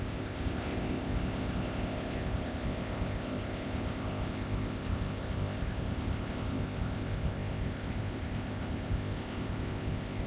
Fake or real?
fake